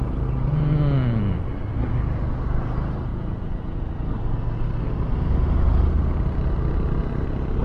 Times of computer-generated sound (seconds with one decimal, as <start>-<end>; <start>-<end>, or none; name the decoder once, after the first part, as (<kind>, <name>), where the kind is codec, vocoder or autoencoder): 3.1-3.8 (vocoder, Vocos)